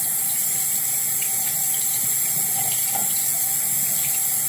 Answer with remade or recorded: recorded